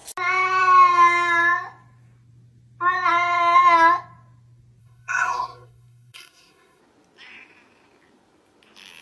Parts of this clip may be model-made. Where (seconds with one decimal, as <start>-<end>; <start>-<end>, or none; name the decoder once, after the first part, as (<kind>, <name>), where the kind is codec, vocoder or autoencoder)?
4.8-6.8 (codec, SNAC)